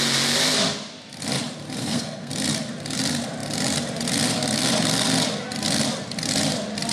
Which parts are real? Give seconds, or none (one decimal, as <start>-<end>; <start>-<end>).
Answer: 0.0-1.8; 2.3-6.9